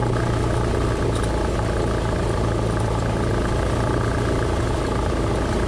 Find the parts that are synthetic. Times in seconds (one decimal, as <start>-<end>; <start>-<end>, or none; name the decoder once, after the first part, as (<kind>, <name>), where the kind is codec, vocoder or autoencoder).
none